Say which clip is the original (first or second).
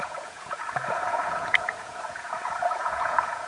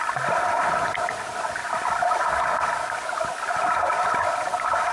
second